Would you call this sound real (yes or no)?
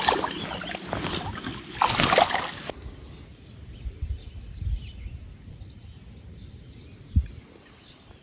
yes